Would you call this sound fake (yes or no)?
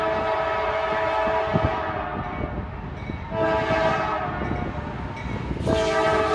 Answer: no